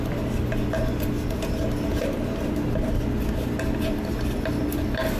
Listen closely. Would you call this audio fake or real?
real